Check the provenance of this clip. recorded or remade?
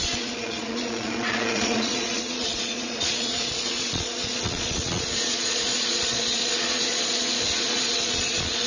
remade